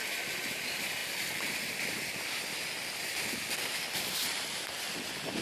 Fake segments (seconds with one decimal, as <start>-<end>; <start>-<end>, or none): none